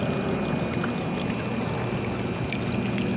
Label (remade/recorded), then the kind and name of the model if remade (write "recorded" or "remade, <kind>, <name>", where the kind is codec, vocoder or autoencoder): recorded